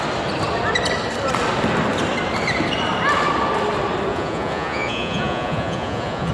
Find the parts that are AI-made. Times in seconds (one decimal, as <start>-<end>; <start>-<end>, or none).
4.1-6.3